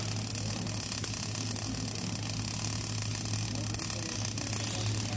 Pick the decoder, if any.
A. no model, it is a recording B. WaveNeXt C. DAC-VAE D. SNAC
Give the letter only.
A